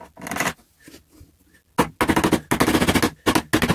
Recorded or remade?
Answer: recorded